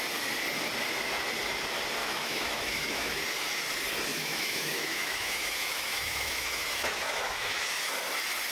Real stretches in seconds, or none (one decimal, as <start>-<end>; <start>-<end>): 0.0-2.0; 3.2-4.1; 7.9-8.5